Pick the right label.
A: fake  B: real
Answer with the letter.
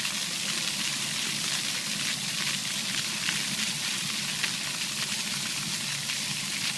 B